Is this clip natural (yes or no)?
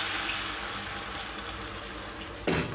yes